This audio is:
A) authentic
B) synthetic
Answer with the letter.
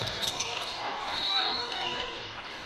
B